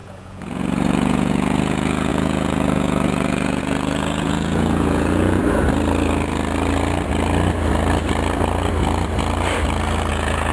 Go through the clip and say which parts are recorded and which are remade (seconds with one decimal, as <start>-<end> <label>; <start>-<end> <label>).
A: 0.0-5.4 remade; 5.4-10.1 recorded; 10.1-10.5 remade